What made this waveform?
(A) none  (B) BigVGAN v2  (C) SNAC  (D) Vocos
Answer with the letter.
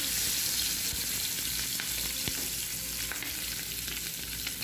A